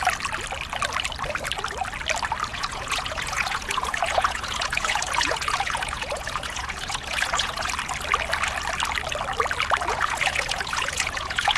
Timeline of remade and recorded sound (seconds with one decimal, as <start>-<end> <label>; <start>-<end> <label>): 0.0-2.5 recorded; 2.5-7.7 remade; 7.7-9.9 recorded; 9.9-11.6 remade